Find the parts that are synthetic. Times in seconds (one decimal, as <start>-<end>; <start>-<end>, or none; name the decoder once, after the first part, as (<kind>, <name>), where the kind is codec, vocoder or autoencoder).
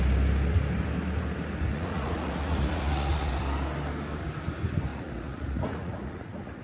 1.7-3.3 (vocoder, Vocos); 4.9-6.6